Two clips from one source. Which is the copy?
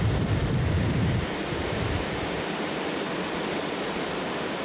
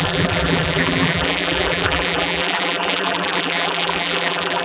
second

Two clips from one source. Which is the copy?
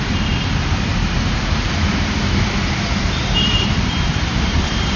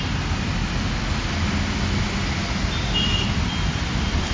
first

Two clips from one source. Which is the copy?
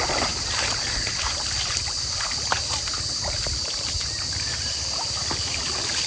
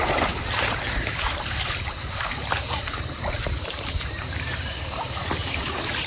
second